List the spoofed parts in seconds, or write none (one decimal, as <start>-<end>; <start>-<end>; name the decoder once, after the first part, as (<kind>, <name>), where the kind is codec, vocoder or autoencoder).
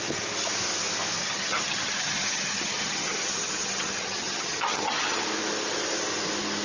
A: 1.2-5.2 (vocoder, HiFi-GAN)